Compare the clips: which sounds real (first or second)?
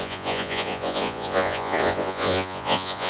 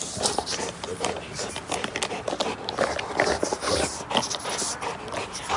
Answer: second